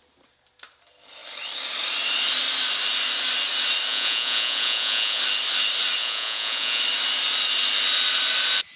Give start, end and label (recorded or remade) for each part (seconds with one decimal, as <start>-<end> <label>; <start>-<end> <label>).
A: 0.0-3.9 recorded; 3.9-5.2 remade; 5.2-6.0 recorded; 6.0-6.8 remade; 6.8-8.8 recorded